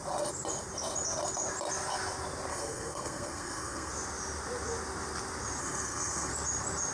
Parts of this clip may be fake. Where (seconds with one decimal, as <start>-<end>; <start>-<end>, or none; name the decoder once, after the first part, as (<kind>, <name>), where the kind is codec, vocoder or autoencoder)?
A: 2.5-3.9 (codec, SNAC); 5.6-6.3